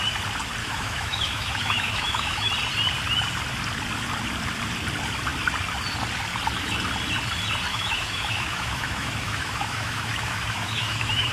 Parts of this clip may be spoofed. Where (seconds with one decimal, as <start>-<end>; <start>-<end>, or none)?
0.6-2.5; 7.7-11.3